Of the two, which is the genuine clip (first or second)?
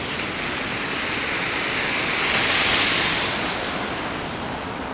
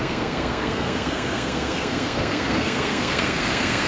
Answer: first